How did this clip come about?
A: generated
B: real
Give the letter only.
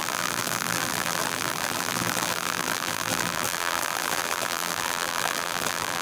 A